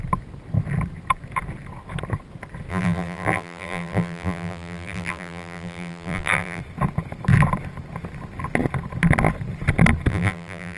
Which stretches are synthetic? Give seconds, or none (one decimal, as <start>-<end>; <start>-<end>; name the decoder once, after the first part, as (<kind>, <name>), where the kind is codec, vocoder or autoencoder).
2.7-6.6 (vocoder, BigVGAN v2); 10.1-10.8